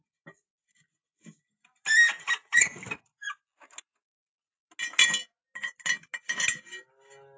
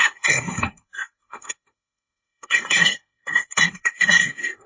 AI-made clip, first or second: second